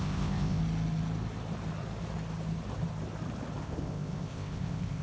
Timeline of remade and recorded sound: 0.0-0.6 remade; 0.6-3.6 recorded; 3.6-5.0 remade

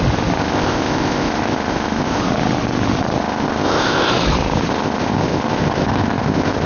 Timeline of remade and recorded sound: 0.0-0.4 recorded; 0.4-2.2 remade; 2.2-3.2 recorded; 3.2-4.1 remade; 4.1-4.7 recorded; 4.7-6.7 remade

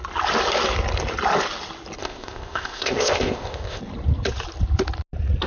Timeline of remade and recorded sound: 0.0-2.0 recorded; 2.0-3.8 remade; 3.8-5.5 recorded

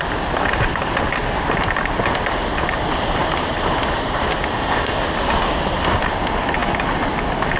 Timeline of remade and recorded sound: 0.0-4.5 recorded; 4.5-5.0 remade; 5.0-7.6 recorded

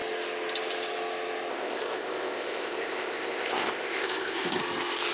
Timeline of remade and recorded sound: 0.0-1.5 recorded; 1.5-4.6 remade; 4.6-5.1 recorded